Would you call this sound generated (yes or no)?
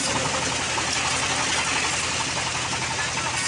no